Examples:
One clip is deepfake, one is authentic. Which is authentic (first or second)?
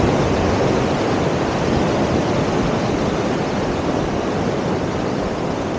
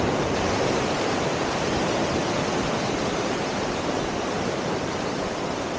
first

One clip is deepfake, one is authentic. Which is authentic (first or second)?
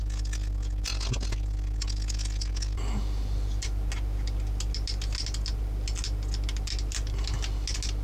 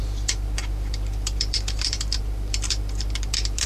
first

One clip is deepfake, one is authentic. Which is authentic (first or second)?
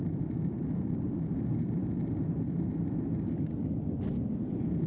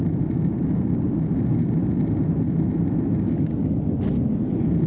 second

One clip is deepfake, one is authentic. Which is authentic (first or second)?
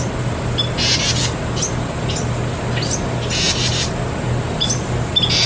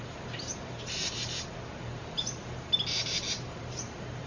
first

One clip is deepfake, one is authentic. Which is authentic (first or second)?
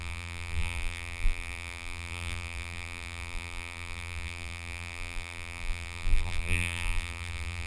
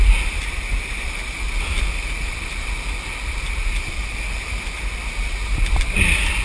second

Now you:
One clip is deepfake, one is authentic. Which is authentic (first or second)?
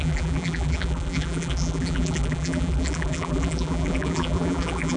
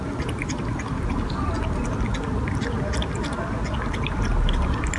second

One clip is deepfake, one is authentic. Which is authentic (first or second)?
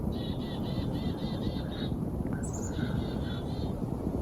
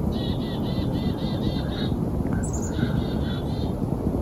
second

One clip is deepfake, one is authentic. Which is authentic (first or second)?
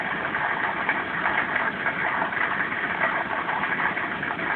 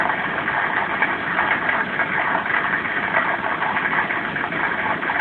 second